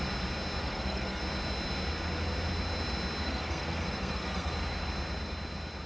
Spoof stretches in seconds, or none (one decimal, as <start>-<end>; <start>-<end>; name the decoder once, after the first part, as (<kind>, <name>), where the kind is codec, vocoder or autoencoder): 0.6-1.2 (codec, SNAC); 3.2-4.5